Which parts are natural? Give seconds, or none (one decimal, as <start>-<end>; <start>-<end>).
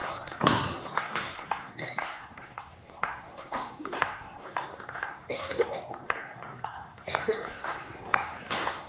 none